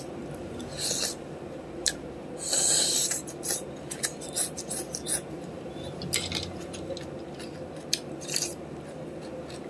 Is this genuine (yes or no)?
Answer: no